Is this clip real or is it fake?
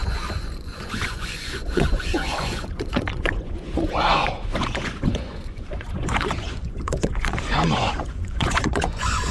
fake